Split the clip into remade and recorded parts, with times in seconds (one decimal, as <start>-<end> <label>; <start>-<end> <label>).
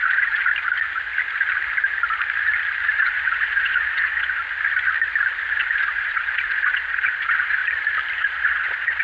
0.0-0.5 remade; 0.5-2.9 recorded; 2.9-4.4 remade; 4.4-5.5 recorded; 5.5-7.6 remade; 7.6-8.2 recorded; 8.2-9.0 remade